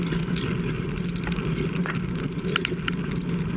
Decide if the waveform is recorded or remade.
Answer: recorded